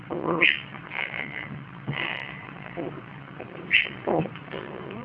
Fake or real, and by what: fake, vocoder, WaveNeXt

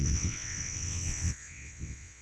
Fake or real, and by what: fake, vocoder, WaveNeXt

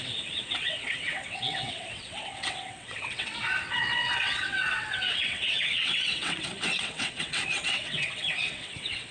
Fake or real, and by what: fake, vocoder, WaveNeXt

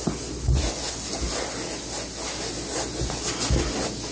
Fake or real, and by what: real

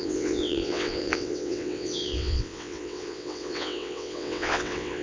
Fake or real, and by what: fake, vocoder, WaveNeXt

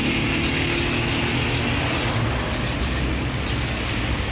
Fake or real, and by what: real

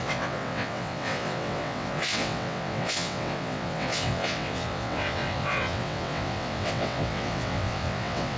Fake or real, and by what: fake, vocoder, WaveNeXt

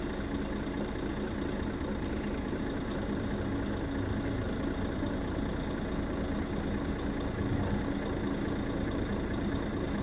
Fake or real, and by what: real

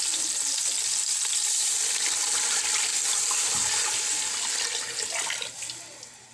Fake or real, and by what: real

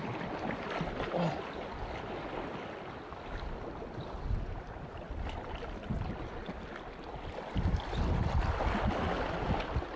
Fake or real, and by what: real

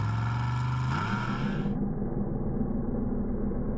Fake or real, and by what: real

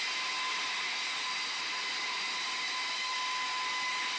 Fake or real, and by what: real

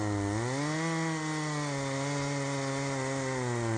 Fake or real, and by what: real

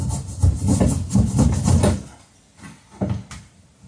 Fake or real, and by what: real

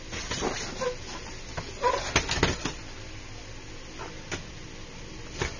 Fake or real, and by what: real